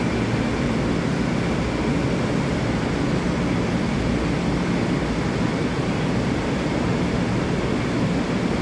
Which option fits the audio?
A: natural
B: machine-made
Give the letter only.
A